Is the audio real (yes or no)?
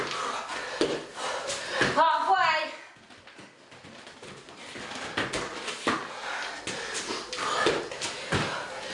yes